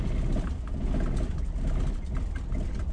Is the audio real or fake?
real